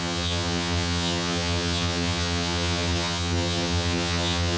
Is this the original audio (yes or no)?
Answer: no